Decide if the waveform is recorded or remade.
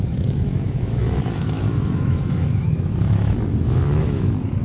remade